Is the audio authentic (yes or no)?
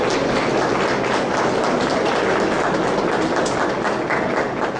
yes